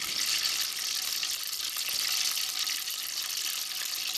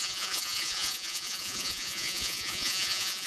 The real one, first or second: first